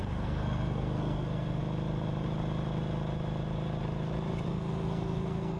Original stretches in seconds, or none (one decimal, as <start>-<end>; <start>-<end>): 1.6-4.5

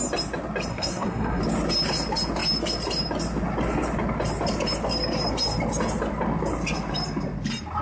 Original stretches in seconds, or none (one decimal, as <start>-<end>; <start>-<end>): 0.0-0.7; 1.4-7.8

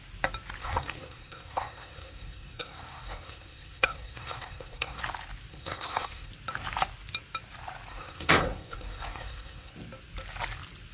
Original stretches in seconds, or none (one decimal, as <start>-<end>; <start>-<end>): 0.0-0.6; 5.0-5.5; 6.3-7.9; 9.7-10.9